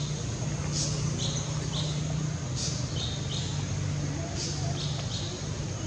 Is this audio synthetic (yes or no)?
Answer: no